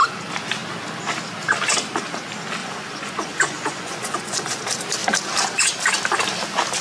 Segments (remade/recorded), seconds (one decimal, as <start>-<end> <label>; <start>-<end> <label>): 0.0-2.6 recorded; 2.6-4.6 remade; 4.6-6.8 recorded